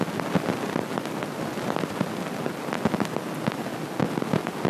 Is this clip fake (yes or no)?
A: no